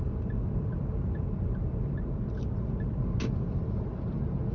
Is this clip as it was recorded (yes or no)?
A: yes